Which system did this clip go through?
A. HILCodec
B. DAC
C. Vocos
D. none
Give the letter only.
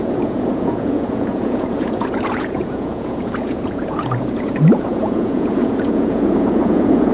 C